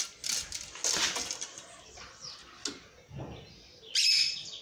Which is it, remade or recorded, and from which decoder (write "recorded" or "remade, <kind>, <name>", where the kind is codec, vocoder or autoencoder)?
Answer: recorded